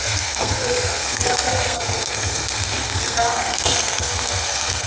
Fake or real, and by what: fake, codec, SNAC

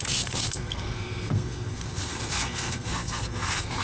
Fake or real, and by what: fake, codec, SNAC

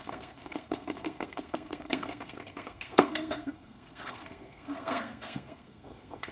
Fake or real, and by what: fake, codec, SNAC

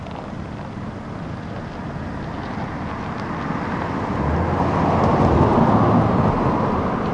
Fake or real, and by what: real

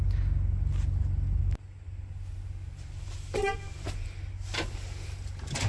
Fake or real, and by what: real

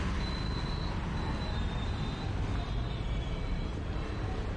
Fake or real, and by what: real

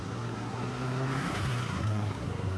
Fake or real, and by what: fake, codec, SNAC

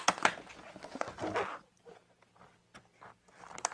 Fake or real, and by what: real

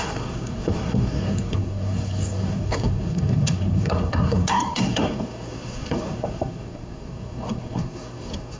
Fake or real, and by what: fake, codec, SNAC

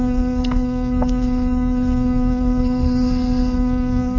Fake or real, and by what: fake, codec, SNAC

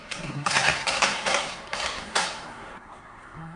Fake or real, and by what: fake, codec, SNAC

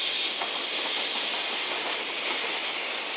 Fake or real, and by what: real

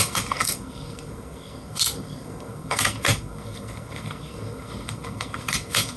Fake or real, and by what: fake, codec, SNAC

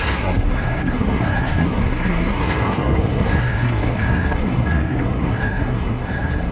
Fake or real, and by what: fake, codec, SNAC